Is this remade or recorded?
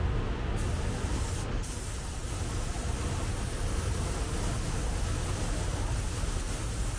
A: recorded